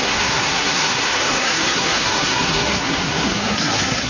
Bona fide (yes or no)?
no